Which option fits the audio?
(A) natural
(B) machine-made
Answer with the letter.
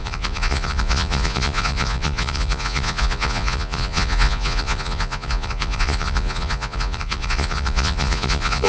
B